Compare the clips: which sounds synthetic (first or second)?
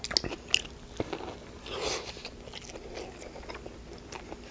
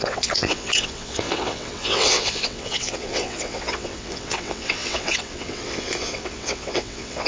second